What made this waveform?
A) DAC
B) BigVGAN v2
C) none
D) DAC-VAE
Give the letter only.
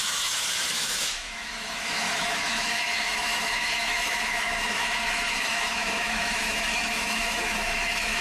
D